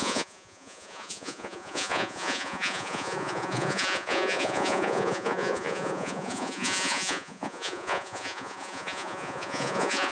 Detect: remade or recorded remade